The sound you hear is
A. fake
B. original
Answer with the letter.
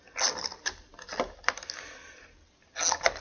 B